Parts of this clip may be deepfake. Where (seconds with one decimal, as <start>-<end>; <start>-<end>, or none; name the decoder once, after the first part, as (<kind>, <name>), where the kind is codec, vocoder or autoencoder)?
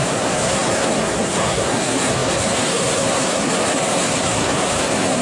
0.0-5.2 (codec, SNAC)